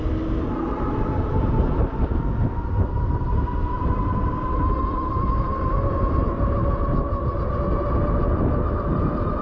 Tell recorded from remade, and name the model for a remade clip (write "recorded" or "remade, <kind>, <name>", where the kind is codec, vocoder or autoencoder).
recorded